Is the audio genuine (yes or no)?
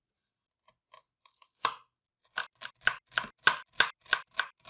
yes